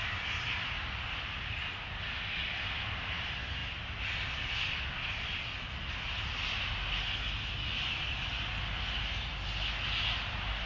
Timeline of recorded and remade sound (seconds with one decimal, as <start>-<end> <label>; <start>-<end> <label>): 0.0-10.7 recorded